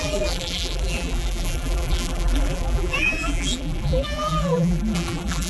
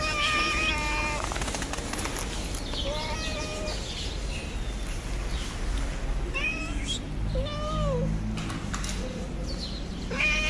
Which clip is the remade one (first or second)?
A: first